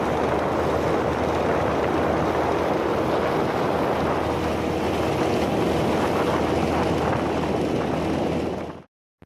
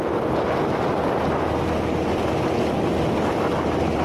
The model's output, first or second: second